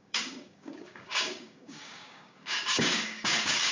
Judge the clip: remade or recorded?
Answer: remade